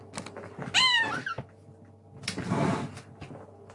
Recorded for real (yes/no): yes